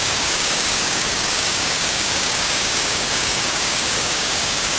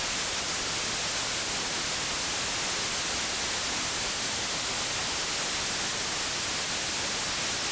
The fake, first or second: first